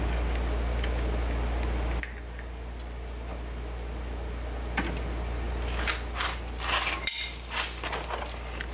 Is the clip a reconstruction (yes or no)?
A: no